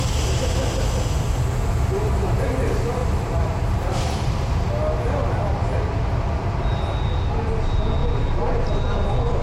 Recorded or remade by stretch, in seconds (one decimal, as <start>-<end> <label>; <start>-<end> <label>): 0.0-3.0 recorded; 3.0-4.7 remade; 4.7-9.4 recorded